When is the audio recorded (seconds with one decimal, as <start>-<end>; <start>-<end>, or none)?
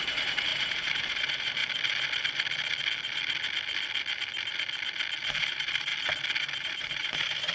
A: 1.6-5.3; 5.9-6.6